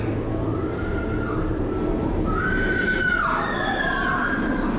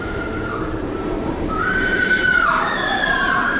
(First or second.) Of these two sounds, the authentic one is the first